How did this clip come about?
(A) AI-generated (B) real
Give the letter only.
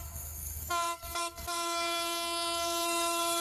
A